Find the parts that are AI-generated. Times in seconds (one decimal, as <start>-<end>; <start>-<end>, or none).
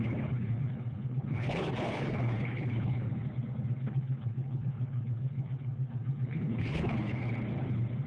0.0-3.1; 3.8-7.2